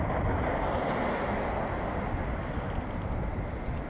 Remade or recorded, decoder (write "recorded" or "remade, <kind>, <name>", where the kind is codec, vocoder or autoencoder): recorded